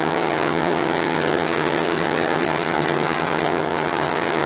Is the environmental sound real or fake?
fake